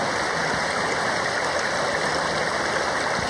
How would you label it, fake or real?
real